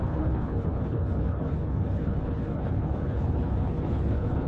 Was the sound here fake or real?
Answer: fake